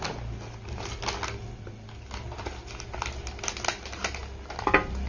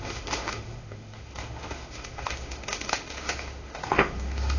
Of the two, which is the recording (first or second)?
first